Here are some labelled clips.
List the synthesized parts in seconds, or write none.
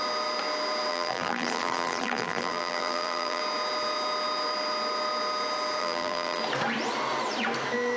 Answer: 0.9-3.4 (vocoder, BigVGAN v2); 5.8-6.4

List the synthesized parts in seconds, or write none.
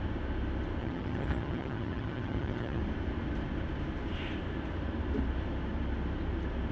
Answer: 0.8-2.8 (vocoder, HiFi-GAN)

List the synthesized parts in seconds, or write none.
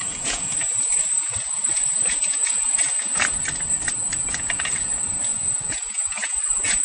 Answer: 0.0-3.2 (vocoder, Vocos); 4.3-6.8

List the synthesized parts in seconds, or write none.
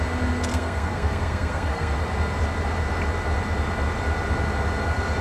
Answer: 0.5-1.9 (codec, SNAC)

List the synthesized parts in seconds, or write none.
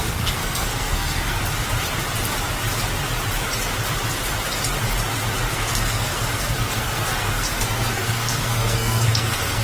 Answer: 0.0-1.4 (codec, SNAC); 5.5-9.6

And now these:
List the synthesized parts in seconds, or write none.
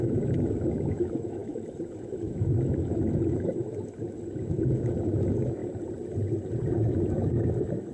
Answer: 0.0-5.6 (autoencoder, DAC-VAE); 6.7-7.9